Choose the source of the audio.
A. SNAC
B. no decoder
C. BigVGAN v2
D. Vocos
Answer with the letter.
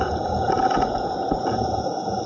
D